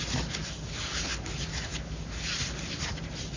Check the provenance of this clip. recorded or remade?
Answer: recorded